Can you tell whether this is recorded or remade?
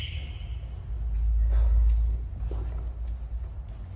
recorded